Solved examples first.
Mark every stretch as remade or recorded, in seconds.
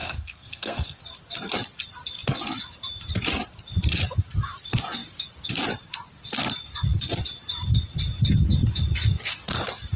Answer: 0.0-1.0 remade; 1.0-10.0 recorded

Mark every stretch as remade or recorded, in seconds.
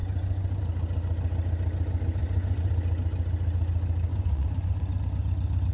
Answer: 0.0-0.6 remade; 0.6-2.2 recorded; 2.2-2.7 remade; 2.7-4.1 recorded; 4.1-5.0 remade; 5.0-5.7 recorded